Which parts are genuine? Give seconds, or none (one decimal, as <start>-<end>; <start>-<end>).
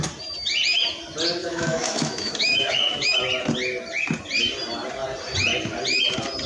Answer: 0.0-1.4; 3.2-6.5